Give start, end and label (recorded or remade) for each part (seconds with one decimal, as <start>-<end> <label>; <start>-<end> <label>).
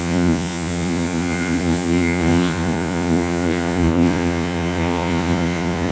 0.0-5.9 remade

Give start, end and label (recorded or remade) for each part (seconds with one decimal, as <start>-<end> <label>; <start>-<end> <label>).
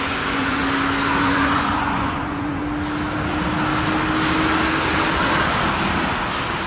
0.0-0.6 remade; 0.6-1.2 recorded; 1.2-2.6 remade; 2.6-6.7 recorded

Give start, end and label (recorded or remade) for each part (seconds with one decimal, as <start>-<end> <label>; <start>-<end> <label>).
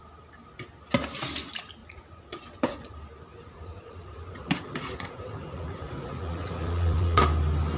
0.0-1.8 recorded; 1.8-2.9 remade; 2.9-3.3 recorded; 3.3-7.2 remade; 7.2-7.8 recorded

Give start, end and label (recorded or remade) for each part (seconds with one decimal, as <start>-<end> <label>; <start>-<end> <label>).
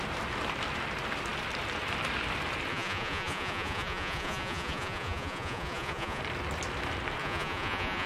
0.0-2.7 recorded; 2.7-6.2 remade; 6.2-7.2 recorded; 7.2-8.1 remade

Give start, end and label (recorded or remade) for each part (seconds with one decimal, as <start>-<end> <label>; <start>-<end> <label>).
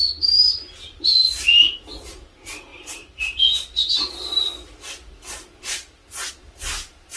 0.0-7.2 recorded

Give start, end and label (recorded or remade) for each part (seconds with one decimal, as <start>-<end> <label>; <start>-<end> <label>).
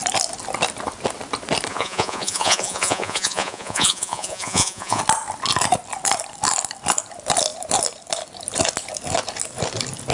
0.0-1.7 recorded; 1.7-5.0 remade; 5.0-10.1 recorded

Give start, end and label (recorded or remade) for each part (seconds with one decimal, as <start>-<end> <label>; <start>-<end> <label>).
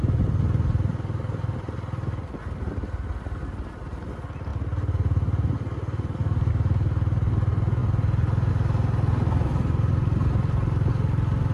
0.0-11.5 recorded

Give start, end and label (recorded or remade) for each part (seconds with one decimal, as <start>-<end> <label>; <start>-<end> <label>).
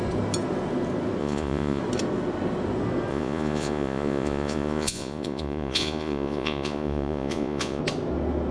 0.0-1.2 recorded; 1.2-1.8 remade; 1.8-3.1 recorded; 3.1-7.8 remade; 7.8-8.5 recorded